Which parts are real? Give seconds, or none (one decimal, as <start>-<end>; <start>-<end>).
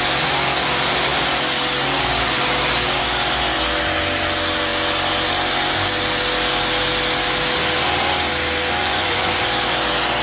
0.0-8.8; 9.4-10.2